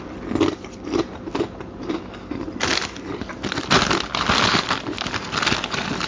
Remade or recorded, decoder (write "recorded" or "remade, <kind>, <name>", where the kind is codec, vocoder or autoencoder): recorded